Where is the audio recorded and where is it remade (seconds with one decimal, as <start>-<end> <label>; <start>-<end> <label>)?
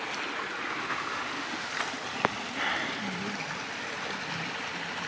0.0-0.8 recorded; 0.8-1.7 remade; 1.7-5.1 recorded